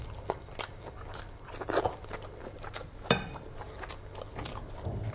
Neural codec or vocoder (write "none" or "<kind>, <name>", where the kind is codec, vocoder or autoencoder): none